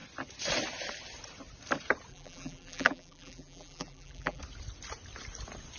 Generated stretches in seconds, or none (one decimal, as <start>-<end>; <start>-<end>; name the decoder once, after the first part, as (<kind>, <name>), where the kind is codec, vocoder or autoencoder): 2.1-4.4 (vocoder, BigVGAN v2)